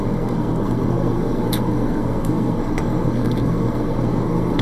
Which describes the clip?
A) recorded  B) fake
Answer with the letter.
B